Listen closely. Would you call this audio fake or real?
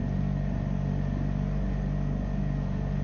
real